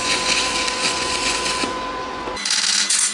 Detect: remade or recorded remade